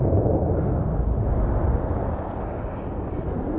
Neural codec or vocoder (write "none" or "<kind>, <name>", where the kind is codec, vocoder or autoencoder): none